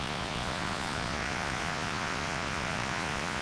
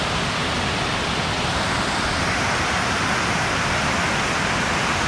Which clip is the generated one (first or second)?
first